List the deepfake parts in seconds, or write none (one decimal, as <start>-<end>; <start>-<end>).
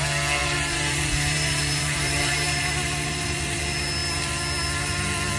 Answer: 0.4-3.6